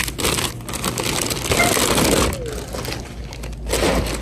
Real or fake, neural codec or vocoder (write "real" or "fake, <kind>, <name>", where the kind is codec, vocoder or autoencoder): real